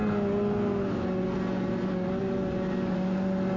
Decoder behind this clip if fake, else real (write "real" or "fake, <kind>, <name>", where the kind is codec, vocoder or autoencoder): real